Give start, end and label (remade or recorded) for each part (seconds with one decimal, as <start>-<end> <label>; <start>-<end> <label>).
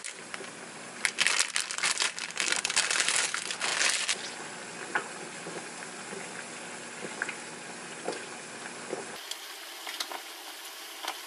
0.0-11.3 recorded